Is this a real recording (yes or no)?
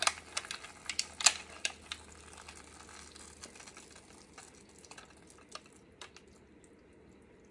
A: yes